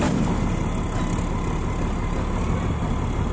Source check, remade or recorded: recorded